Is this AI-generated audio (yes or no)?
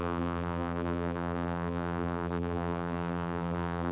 yes